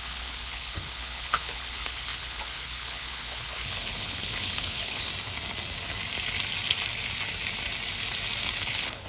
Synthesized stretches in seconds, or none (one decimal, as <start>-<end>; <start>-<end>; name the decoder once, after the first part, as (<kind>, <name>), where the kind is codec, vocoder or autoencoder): 0.0-5.1 (codec, HILCodec); 8.6-9.1